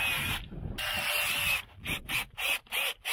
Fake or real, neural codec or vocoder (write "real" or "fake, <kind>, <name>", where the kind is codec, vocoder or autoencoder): real